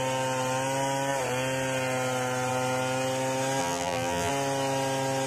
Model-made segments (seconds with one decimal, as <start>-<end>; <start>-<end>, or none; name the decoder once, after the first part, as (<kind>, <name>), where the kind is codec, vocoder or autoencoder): 3.6-4.3 (vocoder, BigVGAN v2)